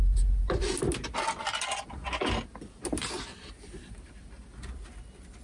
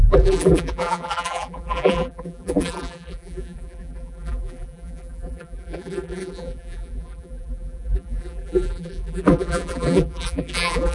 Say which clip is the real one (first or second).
first